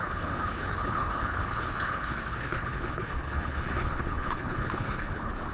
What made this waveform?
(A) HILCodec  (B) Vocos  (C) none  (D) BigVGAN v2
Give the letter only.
A